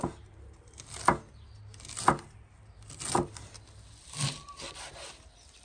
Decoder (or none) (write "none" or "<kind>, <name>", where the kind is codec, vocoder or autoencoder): none